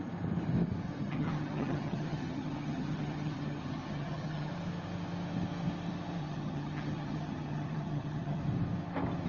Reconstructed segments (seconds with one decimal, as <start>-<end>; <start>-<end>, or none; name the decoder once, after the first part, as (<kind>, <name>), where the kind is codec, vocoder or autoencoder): 1.0-4.5 (vocoder, HiFi-GAN); 6.2-8.4